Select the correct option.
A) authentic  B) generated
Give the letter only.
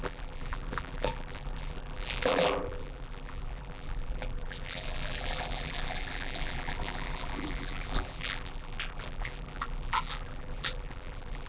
B